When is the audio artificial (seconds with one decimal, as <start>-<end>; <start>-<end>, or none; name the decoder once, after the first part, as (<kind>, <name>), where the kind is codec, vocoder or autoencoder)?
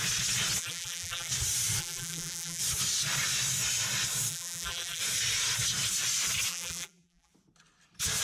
0.6-1.3 (vocoder, BigVGAN v2); 1.8-2.6; 4.3-5.0; 6.5-7.3